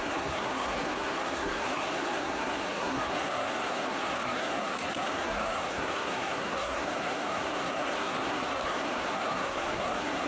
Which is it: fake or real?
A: fake